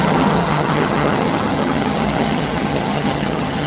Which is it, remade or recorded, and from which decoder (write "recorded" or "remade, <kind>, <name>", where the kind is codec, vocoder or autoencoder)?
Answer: remade, vocoder, HiFi-GAN